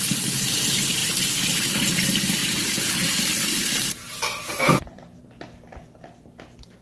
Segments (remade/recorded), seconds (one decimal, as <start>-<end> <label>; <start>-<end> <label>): 0.0-1.0 recorded; 1.0-1.5 remade; 1.5-2.4 recorded; 2.4-3.3 remade; 3.3-4.3 recorded; 4.3-5.2 remade; 5.2-6.8 recorded